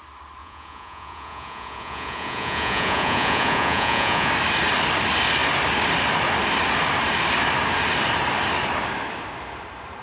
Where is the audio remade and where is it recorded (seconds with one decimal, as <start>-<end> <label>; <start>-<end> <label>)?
0.0-0.4 recorded; 0.4-4.3 remade; 4.3-10.0 recorded